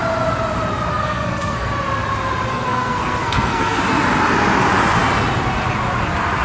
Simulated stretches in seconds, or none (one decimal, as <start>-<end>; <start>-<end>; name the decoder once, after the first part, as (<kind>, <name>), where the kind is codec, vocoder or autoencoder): 0.9-1.7 (codec, SNAC); 2.5-3.8